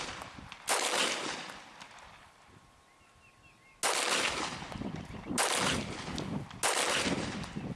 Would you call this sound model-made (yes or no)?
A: no